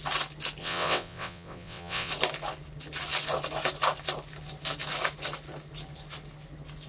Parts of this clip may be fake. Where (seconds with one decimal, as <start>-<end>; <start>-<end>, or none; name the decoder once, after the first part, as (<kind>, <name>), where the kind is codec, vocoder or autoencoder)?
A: 0.6-2.1 (vocoder, WaveNeXt)